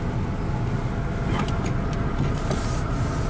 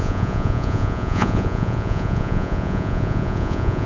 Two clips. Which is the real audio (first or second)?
first